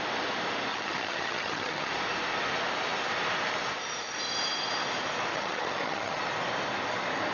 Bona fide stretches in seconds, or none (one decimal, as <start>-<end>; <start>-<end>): 0.0-0.7; 1.9-5.3; 6.2-7.3